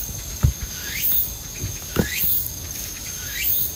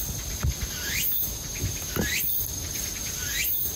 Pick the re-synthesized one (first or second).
first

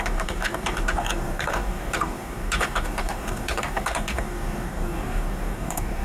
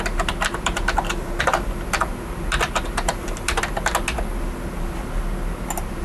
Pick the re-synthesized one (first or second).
first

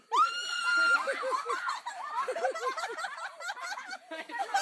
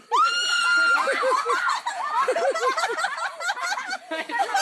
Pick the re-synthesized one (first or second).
first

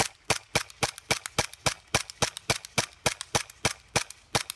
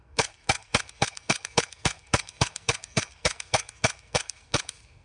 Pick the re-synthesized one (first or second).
second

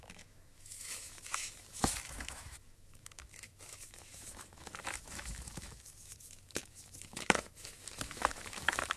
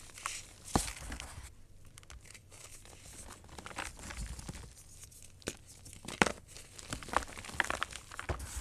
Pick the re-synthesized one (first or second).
first